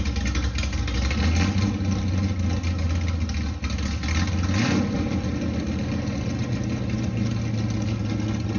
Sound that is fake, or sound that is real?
real